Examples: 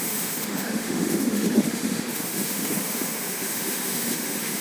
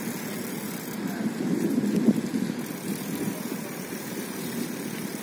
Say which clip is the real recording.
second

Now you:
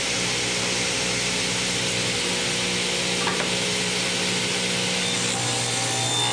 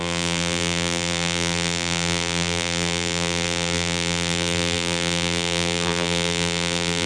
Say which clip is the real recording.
first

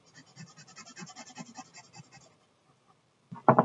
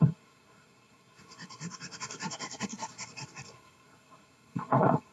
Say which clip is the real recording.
first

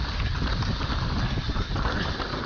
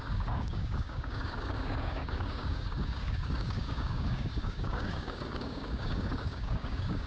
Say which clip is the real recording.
first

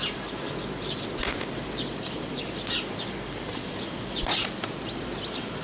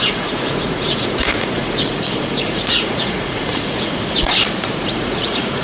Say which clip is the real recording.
first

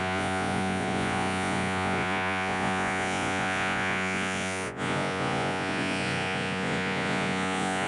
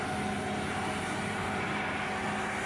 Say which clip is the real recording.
second